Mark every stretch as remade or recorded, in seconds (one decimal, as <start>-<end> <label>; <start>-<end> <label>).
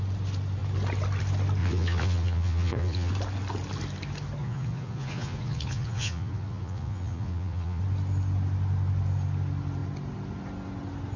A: 0.0-1.6 recorded; 1.6-3.1 remade; 3.1-4.4 recorded; 4.4-7.8 remade; 7.8-11.2 recorded